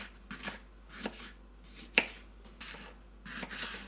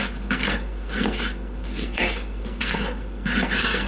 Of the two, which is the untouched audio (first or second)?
first